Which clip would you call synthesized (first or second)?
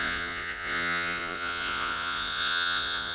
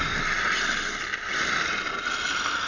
first